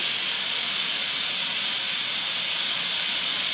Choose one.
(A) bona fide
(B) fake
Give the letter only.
B